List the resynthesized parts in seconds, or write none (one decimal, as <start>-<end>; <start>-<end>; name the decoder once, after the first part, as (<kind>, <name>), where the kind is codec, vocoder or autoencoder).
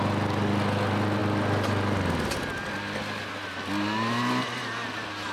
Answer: none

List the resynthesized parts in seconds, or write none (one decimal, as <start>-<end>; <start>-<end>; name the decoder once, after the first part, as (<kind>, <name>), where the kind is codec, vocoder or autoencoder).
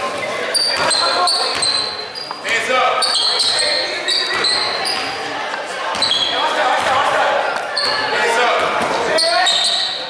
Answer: none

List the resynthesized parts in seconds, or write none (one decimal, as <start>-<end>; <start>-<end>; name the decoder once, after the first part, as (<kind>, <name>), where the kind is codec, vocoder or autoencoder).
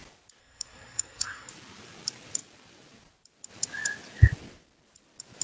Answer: 0.4-1.5 (codec, SNAC)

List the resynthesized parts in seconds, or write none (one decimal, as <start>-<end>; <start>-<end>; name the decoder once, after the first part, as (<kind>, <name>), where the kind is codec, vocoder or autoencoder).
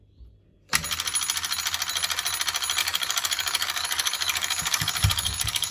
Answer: 2.8-5.7 (codec, DAC)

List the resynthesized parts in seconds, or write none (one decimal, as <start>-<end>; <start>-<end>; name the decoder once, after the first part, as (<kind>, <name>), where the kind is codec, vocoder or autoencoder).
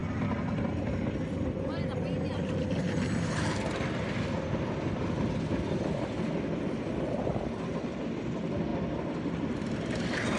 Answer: none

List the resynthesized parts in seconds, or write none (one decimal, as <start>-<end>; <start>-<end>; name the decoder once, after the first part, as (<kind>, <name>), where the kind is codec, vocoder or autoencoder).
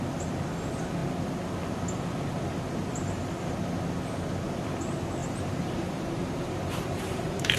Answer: 5.2-7.6 (vocoder, BigVGAN v2)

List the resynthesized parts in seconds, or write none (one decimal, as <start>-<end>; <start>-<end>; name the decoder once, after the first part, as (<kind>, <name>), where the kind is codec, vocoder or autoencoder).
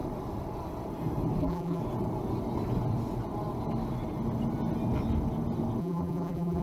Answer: 1.4-1.8 (vocoder, BigVGAN v2); 5.8-6.6